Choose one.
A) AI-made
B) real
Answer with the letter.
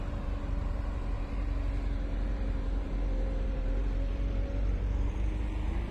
A